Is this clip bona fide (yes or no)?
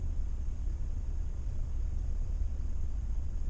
no